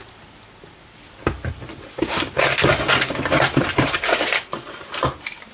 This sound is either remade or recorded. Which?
recorded